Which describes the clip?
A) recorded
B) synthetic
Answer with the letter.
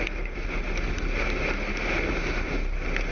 A